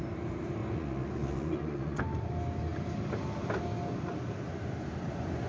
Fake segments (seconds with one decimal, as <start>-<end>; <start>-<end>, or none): 0.6-2.0